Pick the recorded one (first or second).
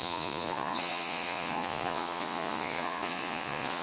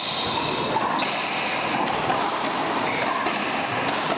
second